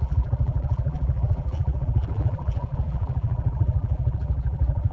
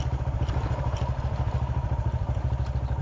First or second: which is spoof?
first